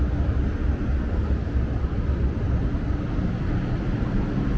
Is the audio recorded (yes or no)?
yes